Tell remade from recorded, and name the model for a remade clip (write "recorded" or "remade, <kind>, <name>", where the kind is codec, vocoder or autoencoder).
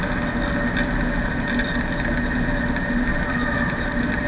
recorded